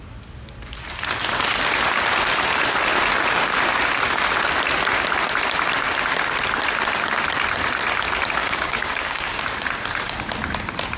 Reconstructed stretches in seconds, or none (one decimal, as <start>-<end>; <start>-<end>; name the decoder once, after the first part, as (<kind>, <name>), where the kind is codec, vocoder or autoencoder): 8.4-9.4 (codec, DAC)